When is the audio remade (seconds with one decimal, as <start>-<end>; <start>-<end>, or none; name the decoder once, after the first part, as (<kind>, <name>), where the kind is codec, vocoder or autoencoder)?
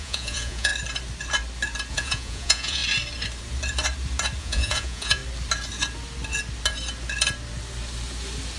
0.0-0.7 (vocoder, Vocos); 1.9-2.8; 4.4-5.2